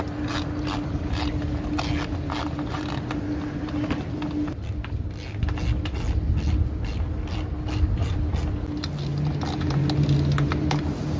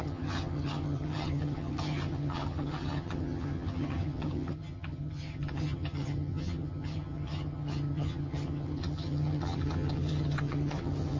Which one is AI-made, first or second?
second